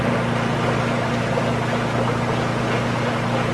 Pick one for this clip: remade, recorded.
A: recorded